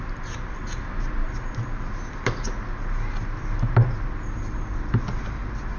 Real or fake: real